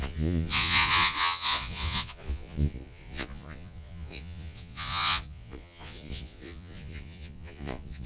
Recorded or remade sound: remade